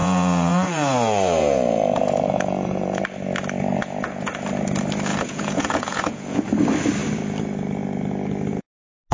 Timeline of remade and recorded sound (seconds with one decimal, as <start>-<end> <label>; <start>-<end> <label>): 0.0-3.0 remade; 3.0-3.8 recorded; 3.8-4.3 remade; 4.3-5.1 recorded; 5.1-6.4 remade; 6.4-9.1 recorded